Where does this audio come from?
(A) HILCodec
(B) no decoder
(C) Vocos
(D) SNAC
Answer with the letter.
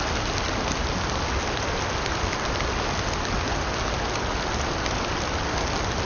B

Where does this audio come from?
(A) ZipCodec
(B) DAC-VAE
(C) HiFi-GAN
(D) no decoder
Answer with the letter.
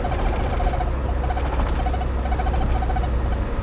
D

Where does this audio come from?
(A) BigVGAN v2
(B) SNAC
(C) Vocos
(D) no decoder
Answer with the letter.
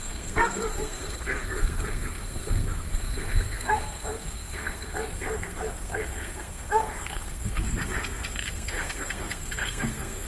B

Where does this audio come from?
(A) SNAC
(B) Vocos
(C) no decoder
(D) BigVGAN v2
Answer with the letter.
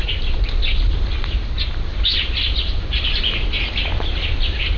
C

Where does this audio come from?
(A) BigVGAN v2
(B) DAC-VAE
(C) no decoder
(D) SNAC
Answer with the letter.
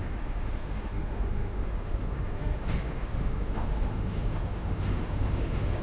B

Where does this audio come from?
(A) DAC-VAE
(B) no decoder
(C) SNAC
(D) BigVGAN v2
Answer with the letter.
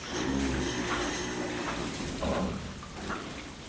B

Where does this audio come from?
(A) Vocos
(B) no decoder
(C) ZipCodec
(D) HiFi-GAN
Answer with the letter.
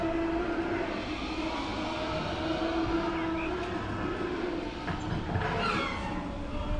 B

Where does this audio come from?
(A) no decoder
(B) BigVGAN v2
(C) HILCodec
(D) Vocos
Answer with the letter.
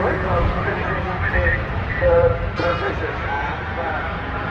D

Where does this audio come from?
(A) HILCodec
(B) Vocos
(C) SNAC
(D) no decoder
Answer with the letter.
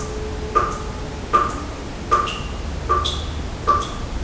D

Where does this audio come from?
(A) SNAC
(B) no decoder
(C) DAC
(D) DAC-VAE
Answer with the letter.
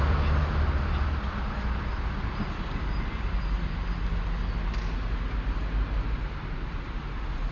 B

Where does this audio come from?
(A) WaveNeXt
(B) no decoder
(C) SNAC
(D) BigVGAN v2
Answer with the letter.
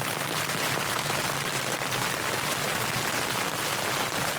B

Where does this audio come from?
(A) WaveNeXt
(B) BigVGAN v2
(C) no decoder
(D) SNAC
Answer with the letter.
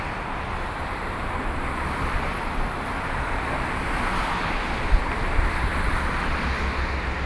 C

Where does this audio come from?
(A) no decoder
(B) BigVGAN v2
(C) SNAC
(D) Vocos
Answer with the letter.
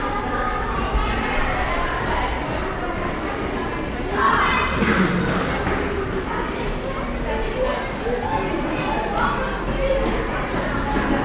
A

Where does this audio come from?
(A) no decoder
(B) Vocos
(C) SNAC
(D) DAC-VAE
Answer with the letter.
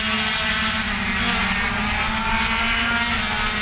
A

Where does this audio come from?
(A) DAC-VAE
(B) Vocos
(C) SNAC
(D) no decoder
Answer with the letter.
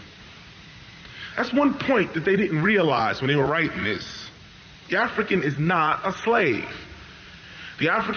B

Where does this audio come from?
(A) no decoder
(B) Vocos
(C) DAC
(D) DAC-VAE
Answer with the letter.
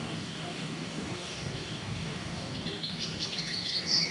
C